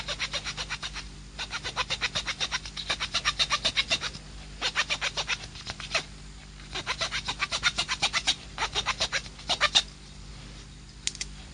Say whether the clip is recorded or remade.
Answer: recorded